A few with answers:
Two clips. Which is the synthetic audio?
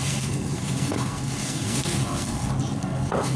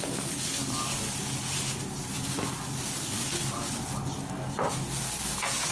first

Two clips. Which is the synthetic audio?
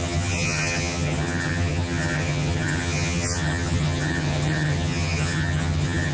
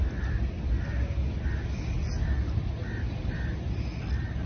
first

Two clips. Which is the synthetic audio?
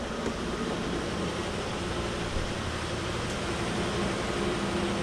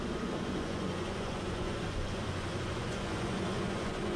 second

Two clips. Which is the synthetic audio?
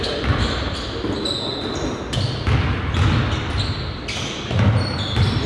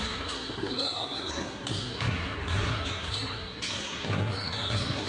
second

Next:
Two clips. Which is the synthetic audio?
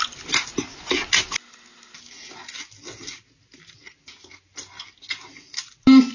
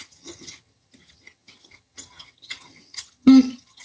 second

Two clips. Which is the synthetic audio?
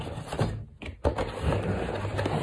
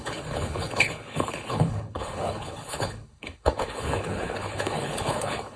second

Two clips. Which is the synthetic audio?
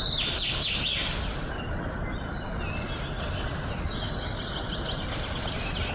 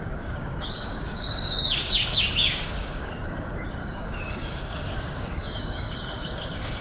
second